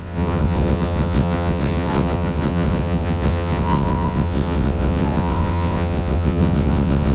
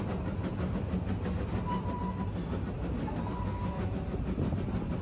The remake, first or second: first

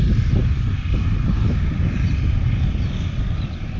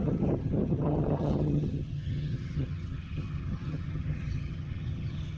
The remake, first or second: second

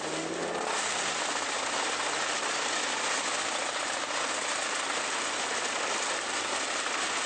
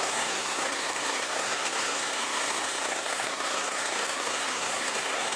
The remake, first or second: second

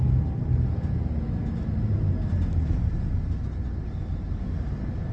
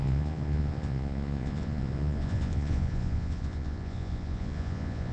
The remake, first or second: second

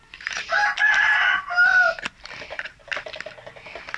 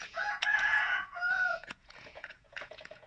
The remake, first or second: second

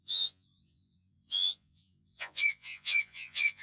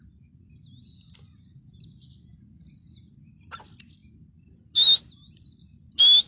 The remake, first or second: first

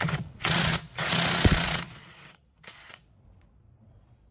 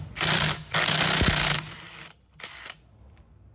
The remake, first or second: first